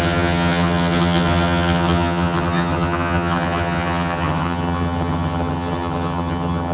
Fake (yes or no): yes